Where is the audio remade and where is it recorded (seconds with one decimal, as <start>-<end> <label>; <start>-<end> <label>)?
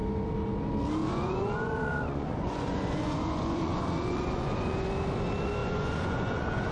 0.0-1.0 recorded; 1.0-4.8 remade; 4.8-5.6 recorded; 5.6-6.7 remade